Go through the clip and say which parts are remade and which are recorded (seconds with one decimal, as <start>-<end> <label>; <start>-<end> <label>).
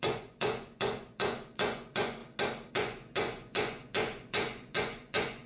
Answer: 0.0-2.2 remade; 2.2-2.7 recorded; 2.7-5.5 remade